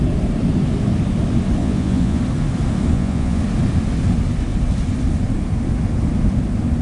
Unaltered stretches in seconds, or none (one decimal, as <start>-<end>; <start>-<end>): 0.0-1.6; 2.2-2.9; 3.4-6.8